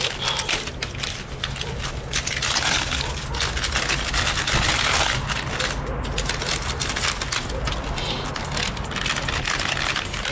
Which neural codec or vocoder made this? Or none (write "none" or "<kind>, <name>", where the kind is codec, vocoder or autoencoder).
none